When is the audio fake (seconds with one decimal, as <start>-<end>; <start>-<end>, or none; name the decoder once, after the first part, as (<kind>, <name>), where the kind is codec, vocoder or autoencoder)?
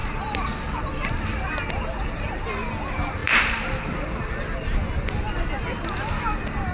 0.0-1.2 (vocoder, BigVGAN v2); 3.2-4.3